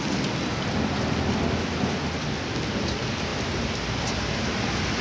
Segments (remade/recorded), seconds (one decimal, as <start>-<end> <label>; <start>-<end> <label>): 0.0-3.3 recorded; 3.3-4.0 remade; 4.0-5.0 recorded

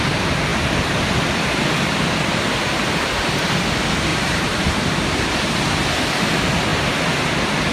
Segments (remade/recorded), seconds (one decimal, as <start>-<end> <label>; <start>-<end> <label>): 0.0-4.1 recorded; 4.1-5.9 remade; 5.9-7.7 recorded

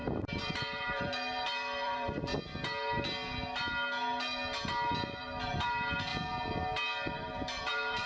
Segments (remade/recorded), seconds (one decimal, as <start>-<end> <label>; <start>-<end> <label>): 0.0-2.3 remade; 2.3-5.2 recorded; 5.2-6.1 remade; 6.1-7.1 recorded; 7.1-8.1 remade

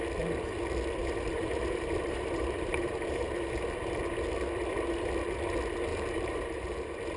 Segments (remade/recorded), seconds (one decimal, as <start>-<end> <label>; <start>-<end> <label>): 0.0-1.0 recorded; 1.0-3.5 remade; 3.5-5.9 recorded; 5.9-7.2 remade

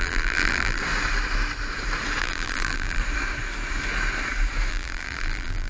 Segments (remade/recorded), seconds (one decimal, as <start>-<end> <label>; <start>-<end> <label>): 0.0-0.8 remade; 0.8-2.2 recorded; 2.2-3.0 remade; 3.0-4.7 recorded; 4.7-5.7 remade